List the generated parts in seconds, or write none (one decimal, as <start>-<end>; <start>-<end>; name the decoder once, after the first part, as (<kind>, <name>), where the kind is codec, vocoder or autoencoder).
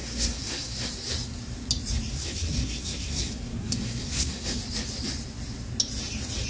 0.0-0.9 (codec, SNAC); 2.1-4.6